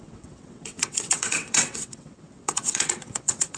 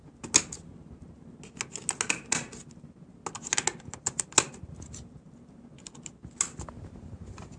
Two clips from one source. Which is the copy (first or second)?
first